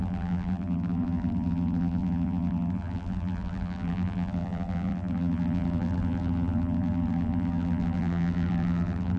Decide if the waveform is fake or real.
fake